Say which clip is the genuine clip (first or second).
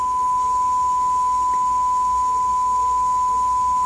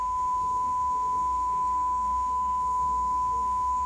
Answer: first